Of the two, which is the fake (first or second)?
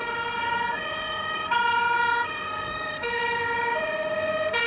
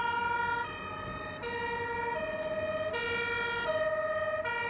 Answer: first